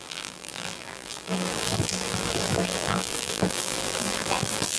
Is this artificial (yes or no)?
yes